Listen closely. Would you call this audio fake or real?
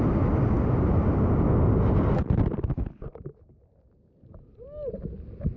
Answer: real